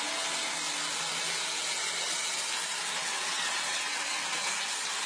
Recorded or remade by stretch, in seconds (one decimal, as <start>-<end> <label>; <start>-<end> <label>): 0.0-3.0 recorded; 3.0-4.5 remade; 4.5-5.1 recorded